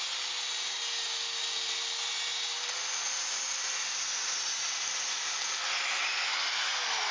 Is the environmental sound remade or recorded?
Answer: recorded